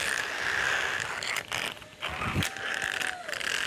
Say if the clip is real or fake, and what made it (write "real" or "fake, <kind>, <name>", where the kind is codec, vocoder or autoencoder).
real